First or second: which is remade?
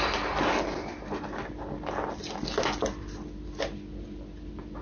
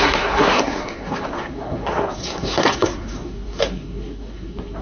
second